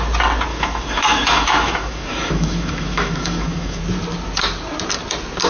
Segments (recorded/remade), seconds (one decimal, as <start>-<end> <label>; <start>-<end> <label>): 0.0-0.5 recorded; 0.5-3.8 remade; 3.8-5.5 recorded